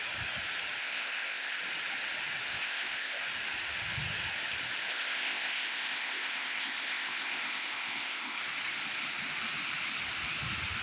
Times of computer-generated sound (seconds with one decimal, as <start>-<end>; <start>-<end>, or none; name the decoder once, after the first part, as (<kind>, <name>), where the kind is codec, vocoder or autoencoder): 0.8-1.6 (codec, ZipCodec); 2.5-3.2; 4.9-8.4